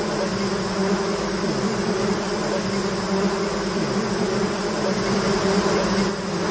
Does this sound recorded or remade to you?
recorded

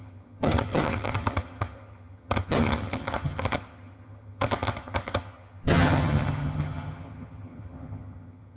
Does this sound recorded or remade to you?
remade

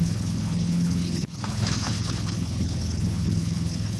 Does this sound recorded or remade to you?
remade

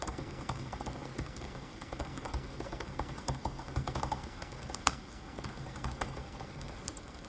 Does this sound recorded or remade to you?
remade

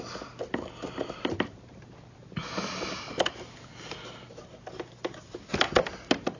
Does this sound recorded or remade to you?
recorded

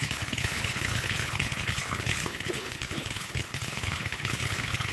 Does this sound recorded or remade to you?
remade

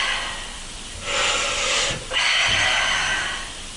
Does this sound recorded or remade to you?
recorded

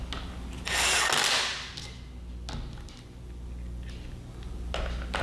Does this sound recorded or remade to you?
recorded